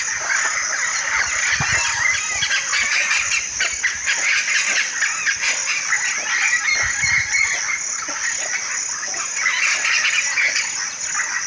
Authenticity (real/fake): real